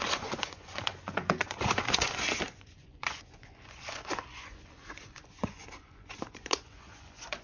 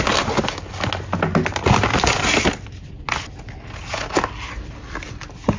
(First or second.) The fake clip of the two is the first